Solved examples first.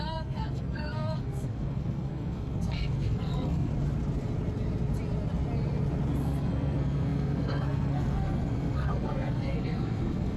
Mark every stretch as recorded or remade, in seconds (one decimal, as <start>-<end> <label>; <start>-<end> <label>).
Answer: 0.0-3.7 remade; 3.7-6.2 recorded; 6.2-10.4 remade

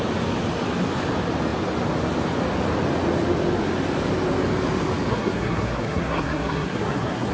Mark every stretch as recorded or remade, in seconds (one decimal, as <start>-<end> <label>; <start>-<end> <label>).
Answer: 0.0-5.1 recorded; 5.1-7.3 remade

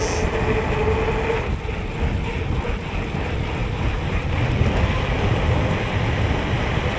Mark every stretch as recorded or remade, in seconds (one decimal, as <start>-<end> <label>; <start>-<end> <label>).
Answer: 0.0-3.6 recorded; 3.6-4.4 remade; 4.4-7.0 recorded

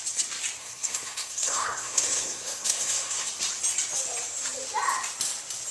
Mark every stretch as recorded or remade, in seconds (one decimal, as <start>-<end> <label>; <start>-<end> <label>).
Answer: 0.0-0.6 recorded; 0.6-3.3 remade; 3.3-5.7 recorded